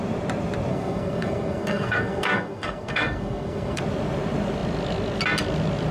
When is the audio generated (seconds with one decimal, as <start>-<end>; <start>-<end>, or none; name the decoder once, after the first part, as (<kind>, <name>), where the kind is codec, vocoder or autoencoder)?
0.7-3.8 (codec, SNAC)